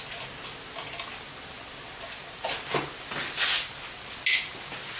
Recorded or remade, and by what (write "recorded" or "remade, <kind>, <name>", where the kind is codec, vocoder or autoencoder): recorded